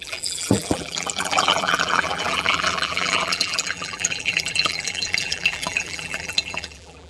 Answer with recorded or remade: remade